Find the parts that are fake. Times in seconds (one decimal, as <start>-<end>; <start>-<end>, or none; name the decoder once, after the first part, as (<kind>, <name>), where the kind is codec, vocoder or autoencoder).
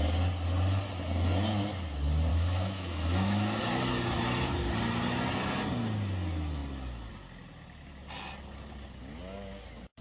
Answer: 2.3-3.6 (autoencoder, DAC-VAE)